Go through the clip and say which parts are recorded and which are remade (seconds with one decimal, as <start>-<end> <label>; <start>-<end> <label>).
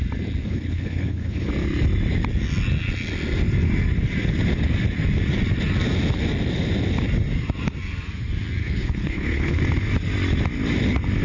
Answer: 0.0-0.4 recorded; 0.4-1.5 remade; 1.5-8.6 recorded; 8.6-9.6 remade; 9.6-11.2 recorded